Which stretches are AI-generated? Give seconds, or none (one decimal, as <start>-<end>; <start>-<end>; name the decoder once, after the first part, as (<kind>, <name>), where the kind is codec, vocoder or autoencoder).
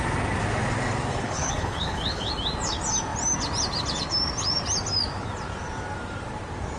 1.1-2.3 (codec, HILCodec)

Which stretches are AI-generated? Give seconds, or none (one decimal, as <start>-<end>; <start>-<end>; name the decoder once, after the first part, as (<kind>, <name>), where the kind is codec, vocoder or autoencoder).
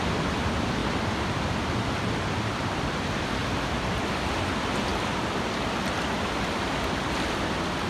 0.8-1.9 (vocoder, BigVGAN v2); 4.9-6.3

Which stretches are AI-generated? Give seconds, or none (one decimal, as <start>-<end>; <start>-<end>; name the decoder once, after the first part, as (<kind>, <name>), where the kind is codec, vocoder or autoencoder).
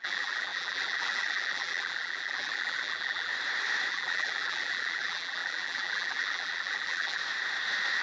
0.0-3.3 (vocoder, BigVGAN v2); 3.9-7.2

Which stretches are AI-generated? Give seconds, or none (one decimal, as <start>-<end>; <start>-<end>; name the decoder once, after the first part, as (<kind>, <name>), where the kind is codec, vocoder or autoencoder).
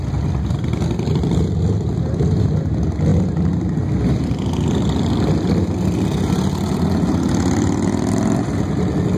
none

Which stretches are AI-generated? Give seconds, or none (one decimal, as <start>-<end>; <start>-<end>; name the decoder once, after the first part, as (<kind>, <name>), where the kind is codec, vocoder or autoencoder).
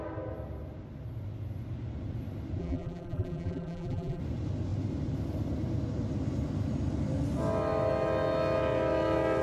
2.6-4.2 (vocoder, BigVGAN v2)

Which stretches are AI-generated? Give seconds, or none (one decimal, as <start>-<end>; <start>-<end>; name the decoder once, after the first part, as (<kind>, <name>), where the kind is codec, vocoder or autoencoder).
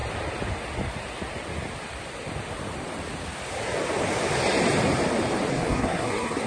5.5-6.5 (codec, SNAC)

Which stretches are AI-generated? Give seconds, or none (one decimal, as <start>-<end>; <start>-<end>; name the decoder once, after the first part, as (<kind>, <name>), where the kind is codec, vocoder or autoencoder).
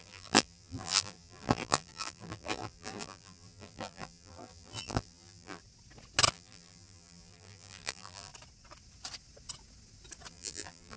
0.0-5.6 (vocoder, BigVGAN v2); 6.3-8.3; 10.3-11.0